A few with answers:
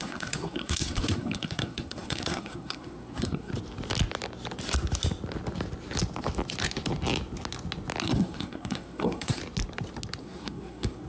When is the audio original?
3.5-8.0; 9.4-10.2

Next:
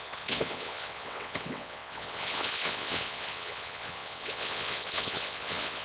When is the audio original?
none

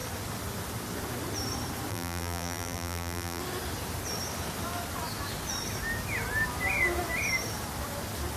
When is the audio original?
0.0-1.9; 3.4-8.4

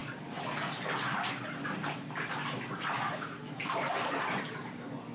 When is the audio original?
0.0-5.1

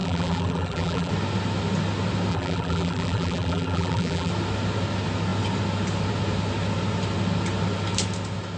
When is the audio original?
1.1-2.3; 4.3-8.6

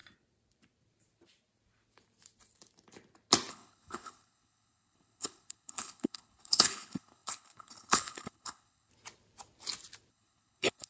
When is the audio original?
0.0-3.5; 8.9-10.1